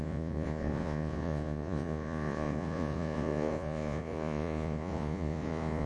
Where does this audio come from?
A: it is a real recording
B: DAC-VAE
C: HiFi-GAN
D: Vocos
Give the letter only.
D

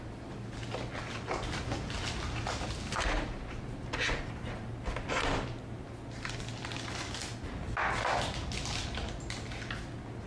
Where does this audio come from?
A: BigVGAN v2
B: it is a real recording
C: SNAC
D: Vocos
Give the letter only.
B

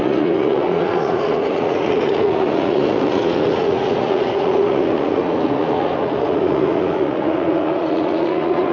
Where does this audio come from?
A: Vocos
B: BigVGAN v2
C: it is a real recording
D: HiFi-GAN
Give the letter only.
A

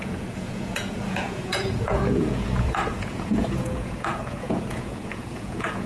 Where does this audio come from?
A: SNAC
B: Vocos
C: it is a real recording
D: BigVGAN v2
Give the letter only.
B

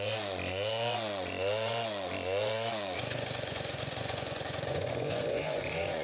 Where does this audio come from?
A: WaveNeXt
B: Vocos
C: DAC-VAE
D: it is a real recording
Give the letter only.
B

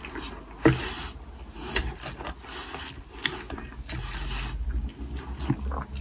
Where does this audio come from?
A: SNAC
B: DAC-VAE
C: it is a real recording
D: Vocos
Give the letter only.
C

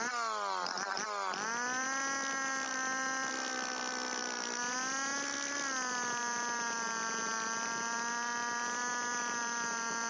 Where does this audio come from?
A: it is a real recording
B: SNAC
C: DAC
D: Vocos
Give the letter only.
A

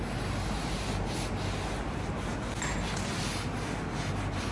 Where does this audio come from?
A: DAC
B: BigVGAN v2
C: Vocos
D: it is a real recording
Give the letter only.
D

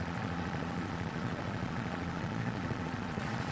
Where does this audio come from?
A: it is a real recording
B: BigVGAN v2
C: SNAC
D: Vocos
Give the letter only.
D